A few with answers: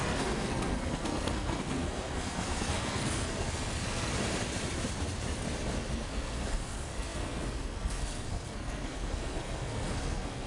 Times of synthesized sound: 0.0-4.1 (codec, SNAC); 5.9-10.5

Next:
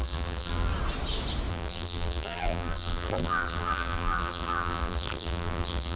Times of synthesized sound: 0.0-0.7 (vocoder, BigVGAN v2); 1.5-6.0

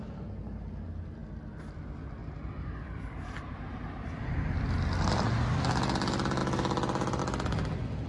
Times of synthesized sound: 2.2-4.3 (vocoder, BigVGAN v2)

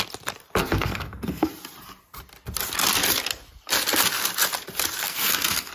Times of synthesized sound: 0.6-1.5 (codec, SNAC); 5.0-5.7

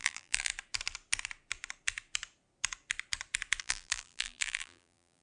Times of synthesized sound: 0.0-0.5 (vocoder, BigVGAN v2); 3.6-5.2

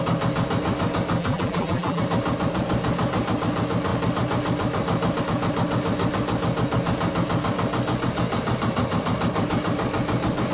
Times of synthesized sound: 1.2-2.0 (vocoder, BigVGAN v2)

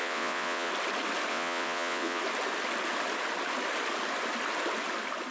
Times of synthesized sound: 0.0-0.7 (vocoder, WaveNeXt); 1.3-2.2

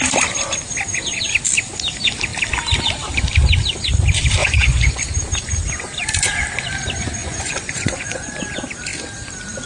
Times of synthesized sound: 4.4-5.0 (vocoder, Vocos); 7.2-8.4